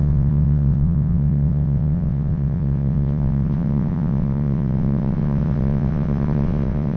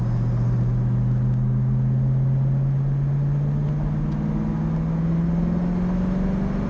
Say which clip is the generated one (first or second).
first